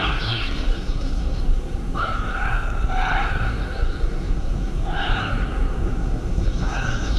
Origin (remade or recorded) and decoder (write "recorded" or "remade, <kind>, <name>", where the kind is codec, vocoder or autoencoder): remade, codec, SNAC